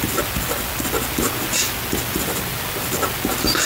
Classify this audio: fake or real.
real